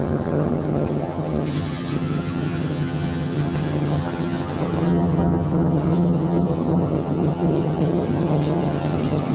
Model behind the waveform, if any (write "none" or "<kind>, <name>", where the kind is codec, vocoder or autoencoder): vocoder, HiFi-GAN